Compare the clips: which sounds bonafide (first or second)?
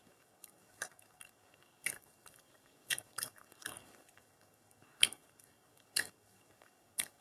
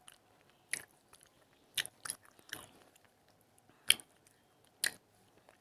second